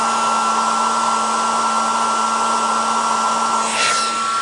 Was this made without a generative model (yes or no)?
yes